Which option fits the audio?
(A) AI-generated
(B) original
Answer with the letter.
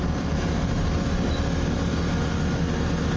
A